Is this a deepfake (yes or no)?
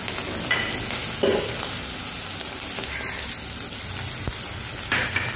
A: no